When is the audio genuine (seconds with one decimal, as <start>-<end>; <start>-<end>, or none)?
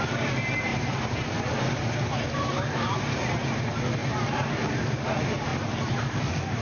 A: 0.0-0.7; 1.4-4.0; 4.9-5.5